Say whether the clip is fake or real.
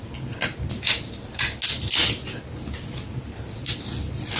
real